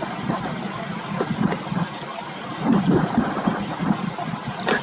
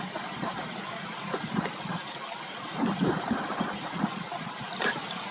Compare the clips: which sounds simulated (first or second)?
second